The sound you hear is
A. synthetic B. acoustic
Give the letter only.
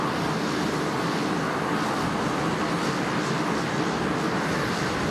B